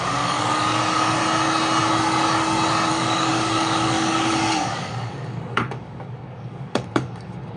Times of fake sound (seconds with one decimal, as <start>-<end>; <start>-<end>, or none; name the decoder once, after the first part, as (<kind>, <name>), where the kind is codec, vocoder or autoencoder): 0.0-1.2 (codec, DAC); 2.9-7.6